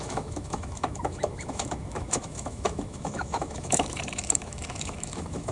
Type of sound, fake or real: fake